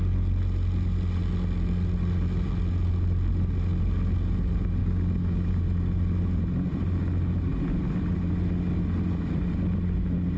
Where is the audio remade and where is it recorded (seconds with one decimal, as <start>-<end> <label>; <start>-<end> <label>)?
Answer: 0.0-4.8 recorded; 4.8-5.6 remade; 5.6-10.4 recorded